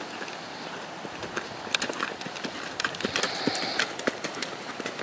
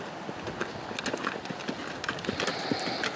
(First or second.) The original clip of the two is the second